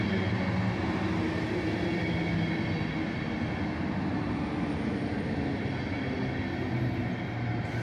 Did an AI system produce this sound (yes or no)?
no